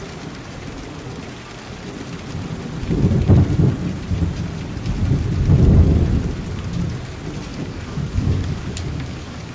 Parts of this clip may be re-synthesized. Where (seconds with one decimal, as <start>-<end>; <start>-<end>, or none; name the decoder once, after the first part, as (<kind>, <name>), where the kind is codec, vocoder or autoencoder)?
7.5-9.5 (codec, DAC)